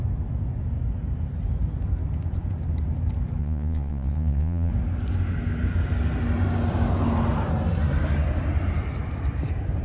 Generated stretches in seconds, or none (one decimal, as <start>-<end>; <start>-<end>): 3.4-4.7